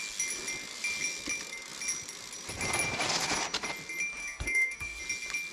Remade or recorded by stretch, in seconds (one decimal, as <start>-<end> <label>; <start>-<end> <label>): 0.0-4.2 recorded; 4.2-5.0 remade; 5.0-5.5 recorded